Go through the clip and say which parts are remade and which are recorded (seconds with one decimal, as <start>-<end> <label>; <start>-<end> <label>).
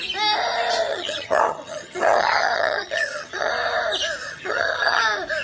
0.0-0.9 recorded; 0.9-3.5 remade; 3.5-4.2 recorded; 4.2-5.0 remade; 5.0-5.4 recorded